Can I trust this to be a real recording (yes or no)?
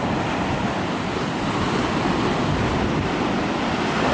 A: yes